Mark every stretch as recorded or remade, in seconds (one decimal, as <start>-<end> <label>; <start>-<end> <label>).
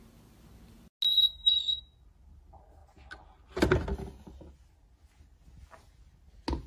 0.0-1.1 recorded; 1.1-1.8 remade; 1.8-6.7 recorded